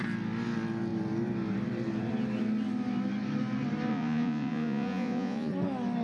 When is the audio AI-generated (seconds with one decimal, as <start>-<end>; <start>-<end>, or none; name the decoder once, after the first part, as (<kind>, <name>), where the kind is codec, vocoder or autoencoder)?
3.9-5.5 (vocoder, Vocos)